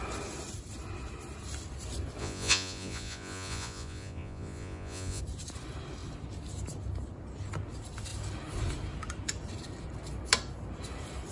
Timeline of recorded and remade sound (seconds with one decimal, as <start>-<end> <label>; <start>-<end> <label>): 0.0-2.2 recorded; 2.2-5.2 remade; 5.2-11.3 recorded